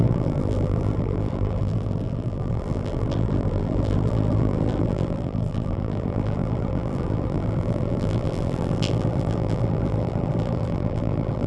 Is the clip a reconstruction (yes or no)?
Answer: yes